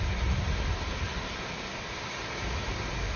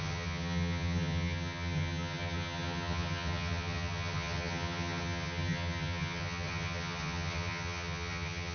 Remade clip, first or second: second